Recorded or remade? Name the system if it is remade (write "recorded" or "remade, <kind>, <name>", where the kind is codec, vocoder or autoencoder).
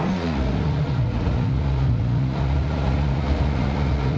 remade, vocoder, Vocos